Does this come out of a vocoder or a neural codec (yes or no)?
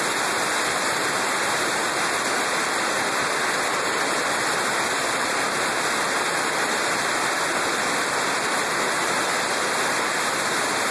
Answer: no